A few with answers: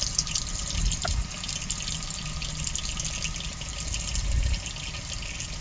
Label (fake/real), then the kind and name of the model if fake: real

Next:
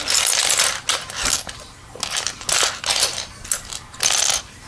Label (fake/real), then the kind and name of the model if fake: real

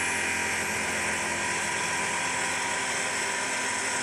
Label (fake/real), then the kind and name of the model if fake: real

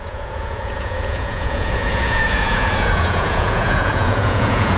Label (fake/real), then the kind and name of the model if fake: fake, vocoder, Vocos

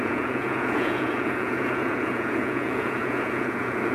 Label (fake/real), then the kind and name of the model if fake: fake, vocoder, Vocos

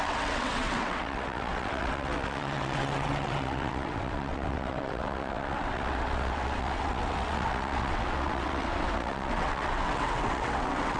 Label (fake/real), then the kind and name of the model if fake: fake, vocoder, WaveNeXt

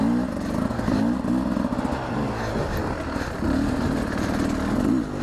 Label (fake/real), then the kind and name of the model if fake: real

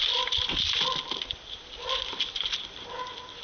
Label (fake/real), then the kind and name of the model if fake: real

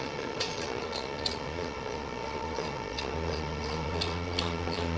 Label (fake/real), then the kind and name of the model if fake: fake, vocoder, Vocos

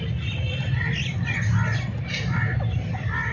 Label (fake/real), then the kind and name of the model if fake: real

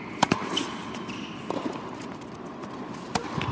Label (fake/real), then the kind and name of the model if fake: real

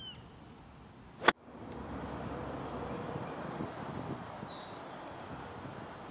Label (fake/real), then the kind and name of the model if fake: real